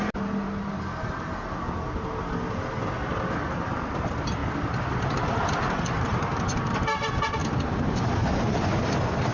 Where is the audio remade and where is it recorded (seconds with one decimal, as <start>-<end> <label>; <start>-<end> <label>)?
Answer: 0.0-9.3 recorded